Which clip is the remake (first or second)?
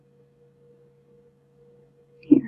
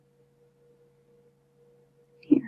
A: first